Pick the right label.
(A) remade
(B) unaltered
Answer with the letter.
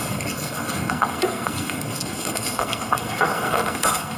A